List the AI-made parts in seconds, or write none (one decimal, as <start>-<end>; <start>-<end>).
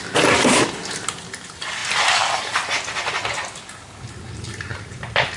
4.7-5.4